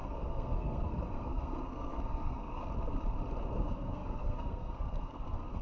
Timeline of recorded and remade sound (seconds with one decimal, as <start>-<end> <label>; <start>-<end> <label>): 0.0-2.6 remade; 2.6-3.5 recorded; 3.5-5.6 remade